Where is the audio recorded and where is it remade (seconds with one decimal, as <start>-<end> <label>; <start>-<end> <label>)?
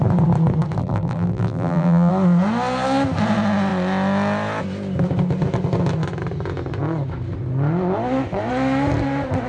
0.0-0.8 recorded; 0.8-2.1 remade; 2.1-9.5 recorded